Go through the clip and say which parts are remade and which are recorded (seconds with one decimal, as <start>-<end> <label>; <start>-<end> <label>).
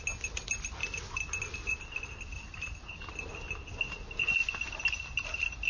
0.0-5.7 recorded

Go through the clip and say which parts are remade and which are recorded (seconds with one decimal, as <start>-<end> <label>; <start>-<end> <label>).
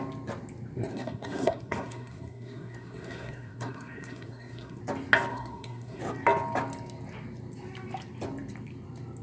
0.0-0.9 recorded; 0.9-4.8 remade; 4.8-5.3 recorded; 5.3-6.0 remade; 6.0-9.2 recorded